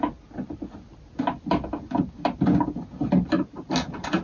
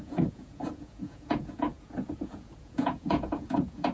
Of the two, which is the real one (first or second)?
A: first